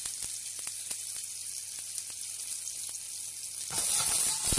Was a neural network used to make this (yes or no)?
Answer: no